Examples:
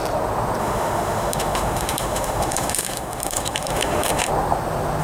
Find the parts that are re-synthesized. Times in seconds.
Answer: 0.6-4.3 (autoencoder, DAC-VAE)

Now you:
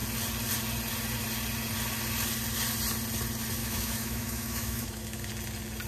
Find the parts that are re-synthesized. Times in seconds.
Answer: 3.6-5.3 (autoencoder, DAC-VAE)

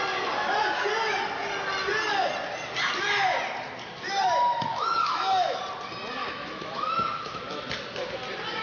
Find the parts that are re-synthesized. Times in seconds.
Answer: 4.7-5.6 (autoencoder, DAC-VAE); 6.2-7.6

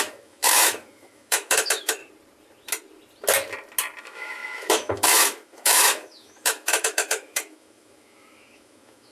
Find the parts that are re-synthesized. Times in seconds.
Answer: 0.0-2.0 (autoencoder, DAC-VAE); 4.0-9.1

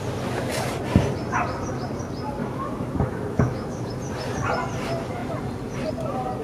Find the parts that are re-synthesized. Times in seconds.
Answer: 2.4-3.9 (autoencoder, DAC-VAE)

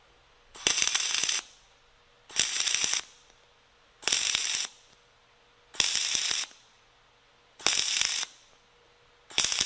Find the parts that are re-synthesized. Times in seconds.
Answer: none

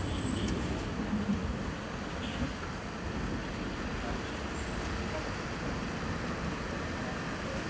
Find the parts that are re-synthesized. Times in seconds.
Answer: none